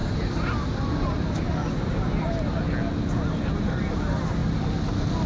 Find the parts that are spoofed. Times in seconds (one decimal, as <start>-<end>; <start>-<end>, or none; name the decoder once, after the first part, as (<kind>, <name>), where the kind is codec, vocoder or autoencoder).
none